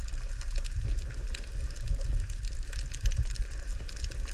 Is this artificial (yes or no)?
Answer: yes